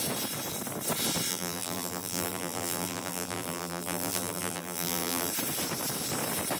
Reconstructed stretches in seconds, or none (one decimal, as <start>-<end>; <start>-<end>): 1.3-5.3